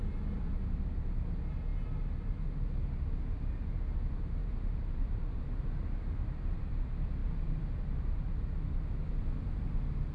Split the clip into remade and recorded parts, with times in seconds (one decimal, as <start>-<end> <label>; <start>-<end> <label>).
0.0-4.4 recorded; 4.4-5.6 remade; 5.6-10.1 recorded